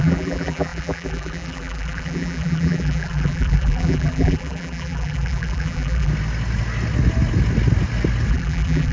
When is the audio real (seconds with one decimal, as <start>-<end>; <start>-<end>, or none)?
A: 6.1-8.3